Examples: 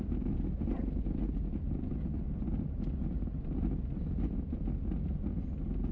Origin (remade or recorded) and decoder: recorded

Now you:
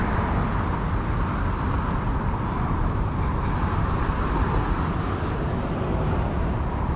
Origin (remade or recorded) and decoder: recorded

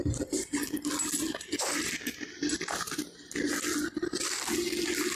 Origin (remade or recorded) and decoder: recorded